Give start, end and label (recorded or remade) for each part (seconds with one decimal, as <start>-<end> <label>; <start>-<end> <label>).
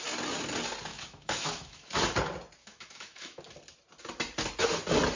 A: 0.0-0.9 recorded; 0.9-2.0 remade; 2.0-2.6 recorded; 2.6-3.4 remade; 3.4-5.2 recorded